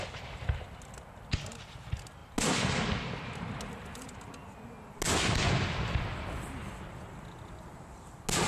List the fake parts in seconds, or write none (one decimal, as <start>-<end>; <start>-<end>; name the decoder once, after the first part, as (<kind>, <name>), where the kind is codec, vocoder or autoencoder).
none